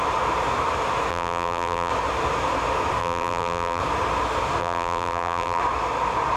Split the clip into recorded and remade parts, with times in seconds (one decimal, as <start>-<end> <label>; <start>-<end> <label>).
0.0-1.1 recorded; 1.1-1.9 remade; 1.9-3.0 recorded; 3.0-3.8 remade; 3.8-4.6 recorded; 4.6-5.6 remade; 5.6-6.4 recorded